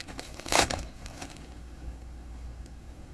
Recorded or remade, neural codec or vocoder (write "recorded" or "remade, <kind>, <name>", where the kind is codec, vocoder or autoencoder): remade, codec, SNAC